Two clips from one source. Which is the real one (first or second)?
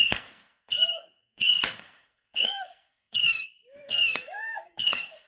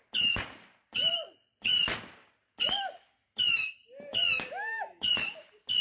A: second